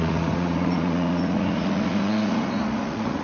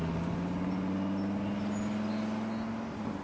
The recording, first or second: second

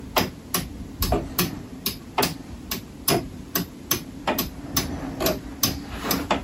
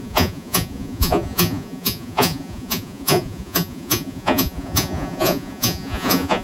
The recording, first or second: first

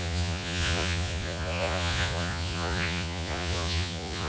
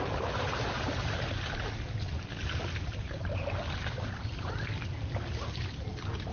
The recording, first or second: second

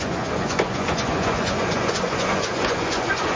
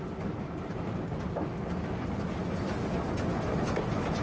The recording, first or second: second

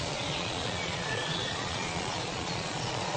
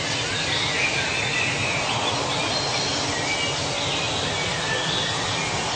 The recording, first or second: second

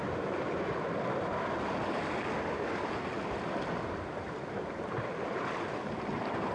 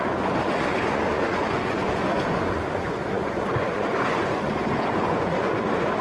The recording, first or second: first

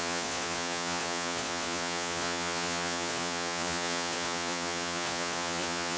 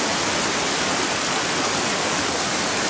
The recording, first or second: second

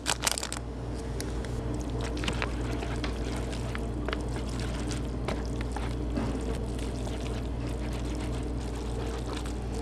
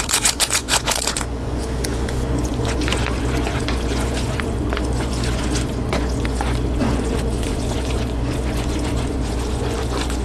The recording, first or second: first